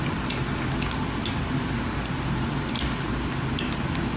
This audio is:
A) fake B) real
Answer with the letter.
B